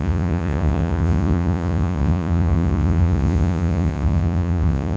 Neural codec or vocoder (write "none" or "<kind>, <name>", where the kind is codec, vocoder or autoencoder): vocoder, Vocos